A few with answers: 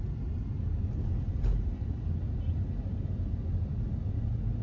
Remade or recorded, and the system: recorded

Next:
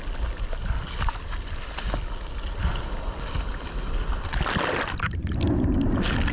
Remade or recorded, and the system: recorded